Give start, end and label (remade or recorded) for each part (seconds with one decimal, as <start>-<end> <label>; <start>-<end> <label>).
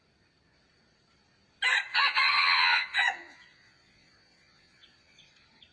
0.0-1.9 recorded; 1.9-5.3 remade; 5.3-5.7 recorded